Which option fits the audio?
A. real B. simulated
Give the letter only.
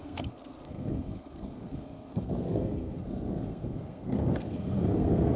B